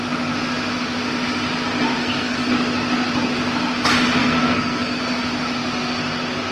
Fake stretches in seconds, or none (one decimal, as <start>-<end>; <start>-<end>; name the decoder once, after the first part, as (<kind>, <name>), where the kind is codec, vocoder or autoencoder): 2.0-2.5 (codec, SNAC); 4.2-5.0